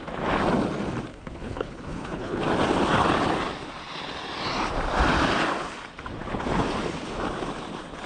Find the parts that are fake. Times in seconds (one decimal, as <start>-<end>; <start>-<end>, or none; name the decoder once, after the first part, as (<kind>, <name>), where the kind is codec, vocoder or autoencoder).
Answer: 1.1-2.4 (codec, HILCodec)